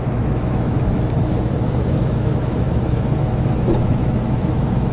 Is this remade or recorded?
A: remade